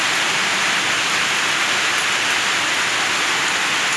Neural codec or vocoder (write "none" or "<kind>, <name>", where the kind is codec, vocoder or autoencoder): none